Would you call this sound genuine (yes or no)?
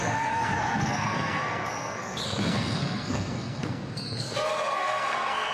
no